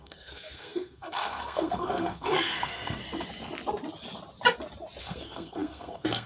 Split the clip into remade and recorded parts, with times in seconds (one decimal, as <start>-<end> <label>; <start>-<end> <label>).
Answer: 0.0-3.0 remade; 3.0-5.0 recorded; 5.0-6.3 remade